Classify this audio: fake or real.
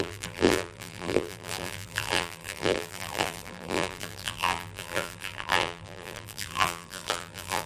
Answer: fake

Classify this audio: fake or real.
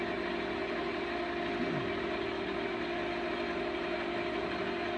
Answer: real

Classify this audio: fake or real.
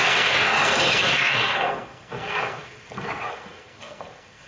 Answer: fake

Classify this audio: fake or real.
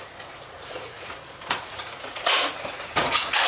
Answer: fake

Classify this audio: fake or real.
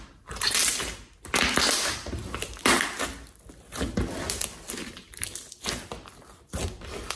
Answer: real